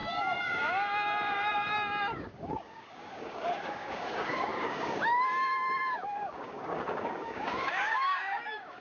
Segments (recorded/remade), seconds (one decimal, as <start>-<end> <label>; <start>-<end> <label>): 0.0-8.8 remade